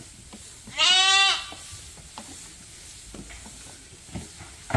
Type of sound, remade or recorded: recorded